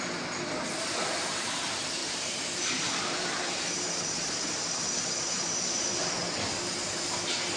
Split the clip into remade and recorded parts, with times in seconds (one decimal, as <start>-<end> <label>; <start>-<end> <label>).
0.0-2.0 recorded; 2.0-6.1 remade; 6.1-7.6 recorded